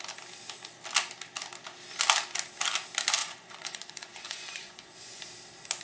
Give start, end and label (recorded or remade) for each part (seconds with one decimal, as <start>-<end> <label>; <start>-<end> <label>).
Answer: 0.0-3.2 recorded; 3.2-5.2 remade; 5.2-5.8 recorded